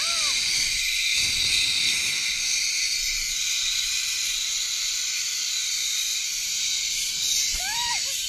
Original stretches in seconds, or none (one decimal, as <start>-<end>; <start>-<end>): 1.4-3.5

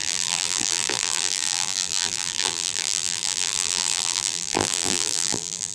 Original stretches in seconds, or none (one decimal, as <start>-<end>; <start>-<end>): none

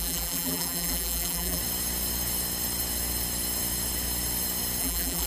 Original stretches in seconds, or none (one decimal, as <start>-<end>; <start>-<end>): 1.6-4.8

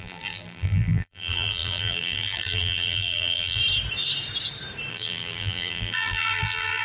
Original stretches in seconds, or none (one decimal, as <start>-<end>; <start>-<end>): 3.6-4.9

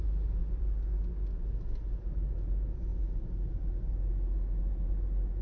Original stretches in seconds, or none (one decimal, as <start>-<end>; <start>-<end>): 0.0-0.4; 0.9-5.4

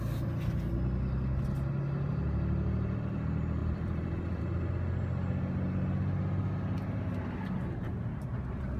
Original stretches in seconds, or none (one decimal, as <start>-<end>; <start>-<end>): 0.0-3.6; 4.4-8.8